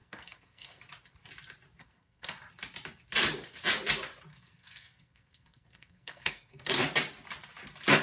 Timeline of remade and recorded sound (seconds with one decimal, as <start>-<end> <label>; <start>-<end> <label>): 0.0-0.8 remade; 0.8-1.8 recorded; 1.8-2.3 remade; 2.3-4.3 recorded; 4.3-6.7 remade; 6.7-8.0 recorded